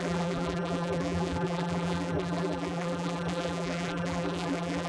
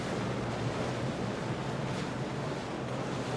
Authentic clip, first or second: second